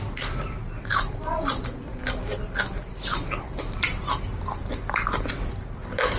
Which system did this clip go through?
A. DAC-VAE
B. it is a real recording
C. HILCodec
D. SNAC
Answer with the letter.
B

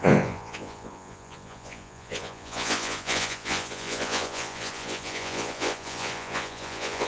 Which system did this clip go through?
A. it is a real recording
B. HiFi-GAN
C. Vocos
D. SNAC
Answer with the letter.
C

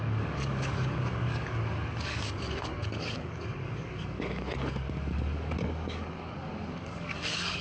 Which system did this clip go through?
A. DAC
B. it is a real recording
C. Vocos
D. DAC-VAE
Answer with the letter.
A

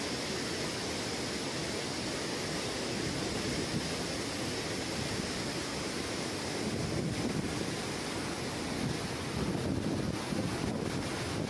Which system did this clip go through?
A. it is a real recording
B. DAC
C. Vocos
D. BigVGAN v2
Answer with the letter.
A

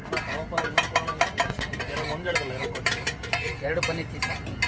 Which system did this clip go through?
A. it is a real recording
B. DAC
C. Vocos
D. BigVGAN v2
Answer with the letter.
A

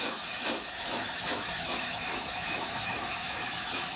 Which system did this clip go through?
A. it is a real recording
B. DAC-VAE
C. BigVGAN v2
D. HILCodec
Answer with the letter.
B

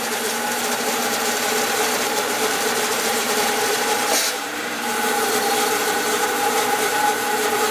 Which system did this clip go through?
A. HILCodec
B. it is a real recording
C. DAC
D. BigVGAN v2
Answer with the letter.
D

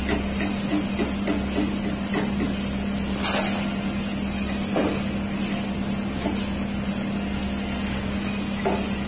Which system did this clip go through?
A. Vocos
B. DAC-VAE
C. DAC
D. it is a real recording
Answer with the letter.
D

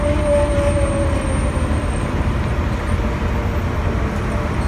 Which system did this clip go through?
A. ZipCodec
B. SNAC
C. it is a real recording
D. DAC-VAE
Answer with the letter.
C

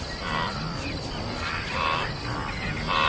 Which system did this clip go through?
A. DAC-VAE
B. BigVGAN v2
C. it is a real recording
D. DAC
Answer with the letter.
C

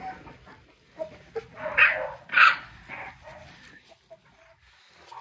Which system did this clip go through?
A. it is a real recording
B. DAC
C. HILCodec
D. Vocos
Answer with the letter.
A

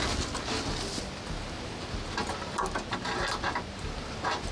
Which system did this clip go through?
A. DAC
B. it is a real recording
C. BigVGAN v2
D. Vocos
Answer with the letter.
B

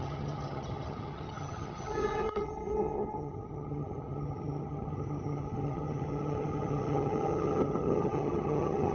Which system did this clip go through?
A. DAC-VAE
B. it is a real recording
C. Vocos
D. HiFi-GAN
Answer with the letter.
D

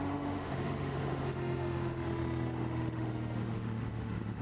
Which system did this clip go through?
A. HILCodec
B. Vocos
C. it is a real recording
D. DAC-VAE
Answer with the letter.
D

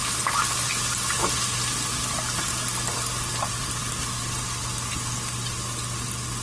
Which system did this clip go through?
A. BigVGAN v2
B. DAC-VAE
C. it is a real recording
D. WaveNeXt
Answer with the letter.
C